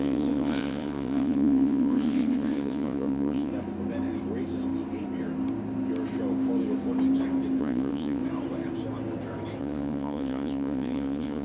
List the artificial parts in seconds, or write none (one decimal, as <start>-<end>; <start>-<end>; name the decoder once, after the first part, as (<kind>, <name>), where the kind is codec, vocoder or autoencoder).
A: 0.0-3.5 (vocoder, WaveNeXt); 7.6-8.2; 9.6-11.4